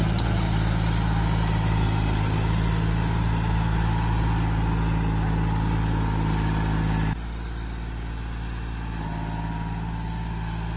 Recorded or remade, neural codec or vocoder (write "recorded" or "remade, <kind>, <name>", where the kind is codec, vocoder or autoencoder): recorded